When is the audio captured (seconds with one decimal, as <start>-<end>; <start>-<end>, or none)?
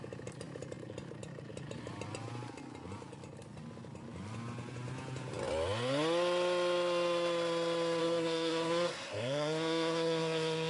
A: 0.0-8.0